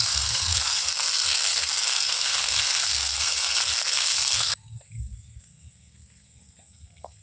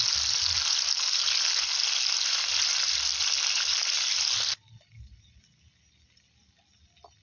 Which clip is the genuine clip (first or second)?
second